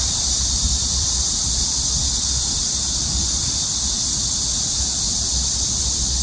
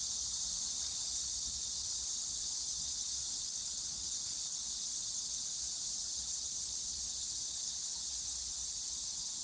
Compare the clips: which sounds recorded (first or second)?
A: first